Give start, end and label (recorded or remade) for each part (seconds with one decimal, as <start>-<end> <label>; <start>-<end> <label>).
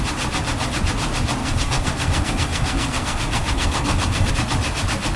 0.0-1.4 recorded; 1.4-4.3 remade; 4.3-5.2 recorded